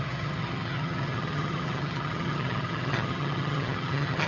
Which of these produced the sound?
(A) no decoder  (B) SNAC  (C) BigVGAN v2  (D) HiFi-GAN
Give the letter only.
D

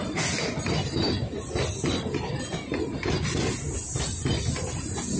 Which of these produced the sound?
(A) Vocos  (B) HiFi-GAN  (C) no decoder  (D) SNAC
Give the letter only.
C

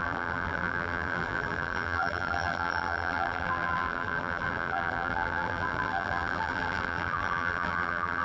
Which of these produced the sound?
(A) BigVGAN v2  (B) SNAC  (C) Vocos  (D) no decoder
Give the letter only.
A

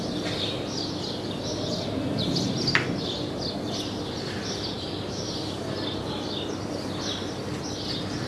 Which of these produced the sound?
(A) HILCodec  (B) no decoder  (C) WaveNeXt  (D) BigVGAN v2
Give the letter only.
B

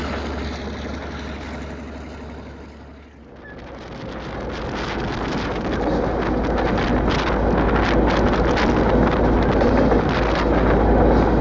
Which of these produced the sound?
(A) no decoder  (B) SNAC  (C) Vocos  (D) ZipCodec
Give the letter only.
A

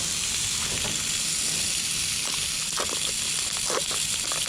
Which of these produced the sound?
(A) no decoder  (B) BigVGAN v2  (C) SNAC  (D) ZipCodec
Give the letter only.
A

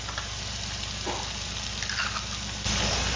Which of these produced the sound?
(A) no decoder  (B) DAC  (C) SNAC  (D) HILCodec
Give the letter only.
A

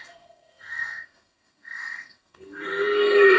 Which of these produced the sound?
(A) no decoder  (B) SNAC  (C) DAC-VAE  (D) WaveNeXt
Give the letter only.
B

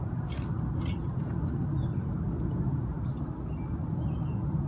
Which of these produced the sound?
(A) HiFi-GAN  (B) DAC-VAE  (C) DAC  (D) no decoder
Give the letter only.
D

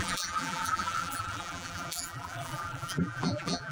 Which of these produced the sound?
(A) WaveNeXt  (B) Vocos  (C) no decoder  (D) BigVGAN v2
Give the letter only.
D